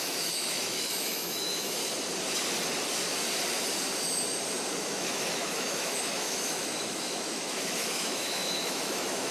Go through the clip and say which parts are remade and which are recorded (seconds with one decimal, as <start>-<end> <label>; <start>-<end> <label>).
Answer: 0.0-1.8 remade; 1.8-4.7 recorded; 4.7-9.3 remade